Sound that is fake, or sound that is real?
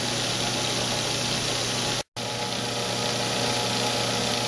real